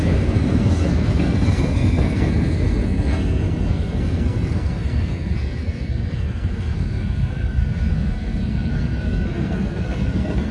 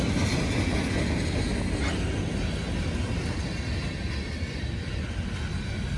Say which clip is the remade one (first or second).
first